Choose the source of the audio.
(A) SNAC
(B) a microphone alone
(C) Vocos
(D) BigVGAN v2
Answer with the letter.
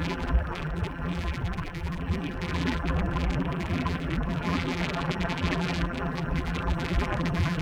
D